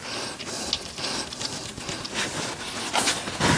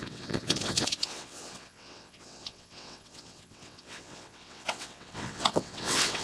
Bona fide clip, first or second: first